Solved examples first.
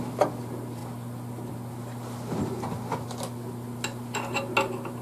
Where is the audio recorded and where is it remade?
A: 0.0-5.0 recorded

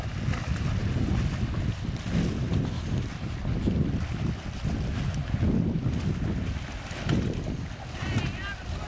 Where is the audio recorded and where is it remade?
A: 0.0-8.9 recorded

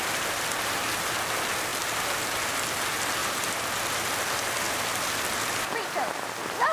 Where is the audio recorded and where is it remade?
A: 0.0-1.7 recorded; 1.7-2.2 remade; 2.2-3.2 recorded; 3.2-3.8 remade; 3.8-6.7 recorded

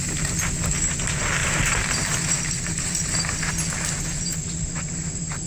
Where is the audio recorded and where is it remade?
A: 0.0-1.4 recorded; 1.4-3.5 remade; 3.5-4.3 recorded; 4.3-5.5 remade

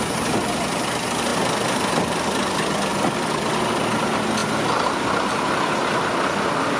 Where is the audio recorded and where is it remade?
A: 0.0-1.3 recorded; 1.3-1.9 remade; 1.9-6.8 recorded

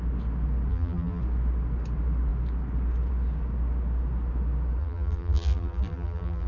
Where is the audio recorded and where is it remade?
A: 0.0-0.7 recorded; 0.7-1.2 remade; 1.2-4.8 recorded; 4.8-6.5 remade

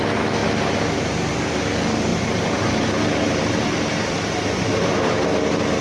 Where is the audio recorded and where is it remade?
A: 0.0-2.1 recorded; 2.1-5.8 remade

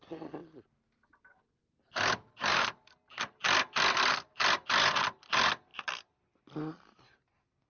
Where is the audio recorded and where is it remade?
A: 0.0-5.7 recorded; 5.7-6.4 remade; 6.4-7.7 recorded